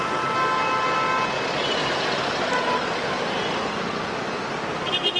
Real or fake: real